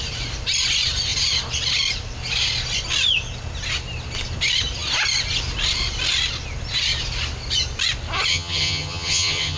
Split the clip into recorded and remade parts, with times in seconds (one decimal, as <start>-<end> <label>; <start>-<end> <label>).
0.0-8.3 recorded; 8.3-9.6 remade